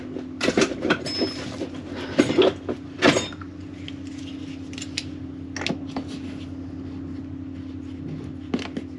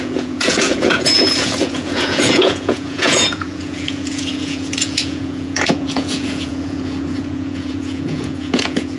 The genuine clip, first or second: first